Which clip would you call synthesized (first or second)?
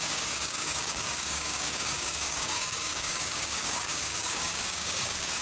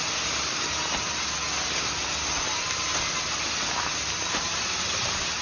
first